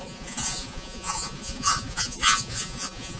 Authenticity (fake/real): fake